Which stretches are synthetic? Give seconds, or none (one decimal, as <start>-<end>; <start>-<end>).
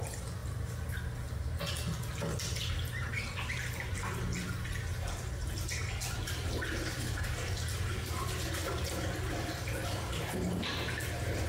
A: none